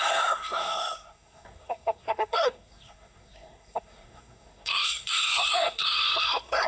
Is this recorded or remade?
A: remade